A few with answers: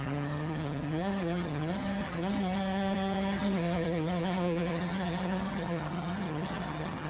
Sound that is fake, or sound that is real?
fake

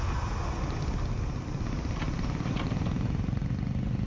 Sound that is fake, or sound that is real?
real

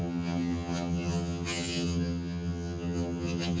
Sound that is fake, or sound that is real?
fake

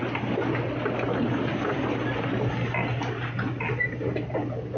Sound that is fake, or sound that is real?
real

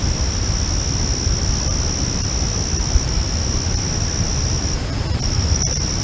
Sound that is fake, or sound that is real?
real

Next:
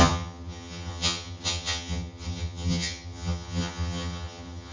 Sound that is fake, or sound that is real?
fake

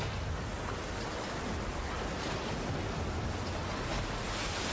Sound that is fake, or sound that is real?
real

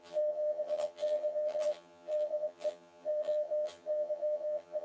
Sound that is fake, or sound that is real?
fake